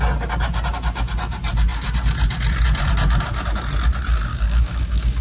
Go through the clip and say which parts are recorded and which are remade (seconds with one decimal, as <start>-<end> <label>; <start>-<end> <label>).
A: 0.0-4.3 recorded; 4.3-5.2 remade

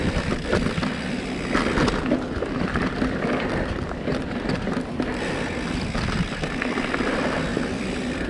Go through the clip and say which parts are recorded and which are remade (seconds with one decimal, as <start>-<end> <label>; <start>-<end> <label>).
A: 0.0-8.3 recorded